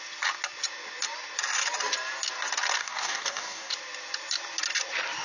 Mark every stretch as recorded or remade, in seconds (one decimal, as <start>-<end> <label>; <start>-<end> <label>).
0.0-2.8 recorded; 2.8-3.7 remade; 3.7-5.2 recorded